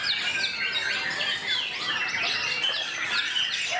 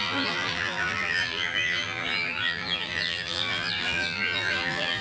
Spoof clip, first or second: second